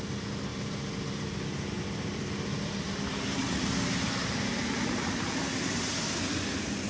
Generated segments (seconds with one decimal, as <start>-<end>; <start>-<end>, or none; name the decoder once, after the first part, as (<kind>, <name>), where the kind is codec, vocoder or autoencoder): 0.5-4.6 (vocoder, BigVGAN v2)